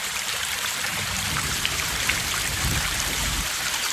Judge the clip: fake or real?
fake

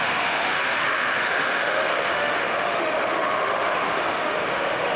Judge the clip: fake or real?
fake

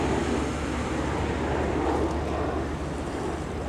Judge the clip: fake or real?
real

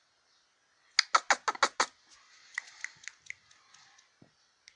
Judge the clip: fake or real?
real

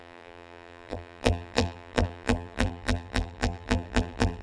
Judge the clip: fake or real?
fake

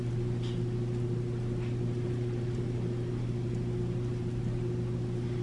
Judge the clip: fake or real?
real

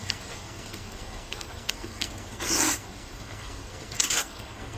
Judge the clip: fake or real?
fake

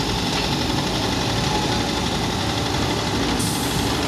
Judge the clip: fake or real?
real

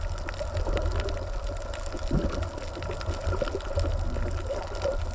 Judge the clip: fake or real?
real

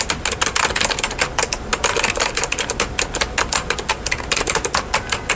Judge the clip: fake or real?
real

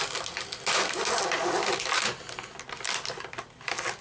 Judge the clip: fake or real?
real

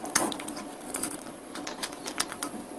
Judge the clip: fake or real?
fake